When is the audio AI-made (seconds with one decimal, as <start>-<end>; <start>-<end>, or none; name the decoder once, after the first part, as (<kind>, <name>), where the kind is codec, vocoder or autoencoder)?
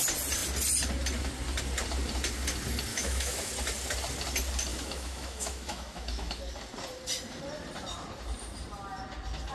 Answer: 2.9-3.5 (autoencoder, DAC-VAE); 4.7-6.4